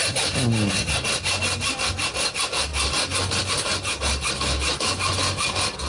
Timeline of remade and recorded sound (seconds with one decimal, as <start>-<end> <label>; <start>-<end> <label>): 0.0-5.9 recorded